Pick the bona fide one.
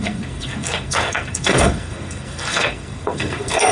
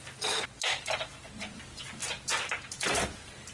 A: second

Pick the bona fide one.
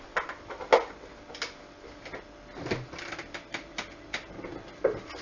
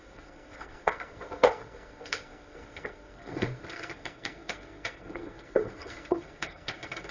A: first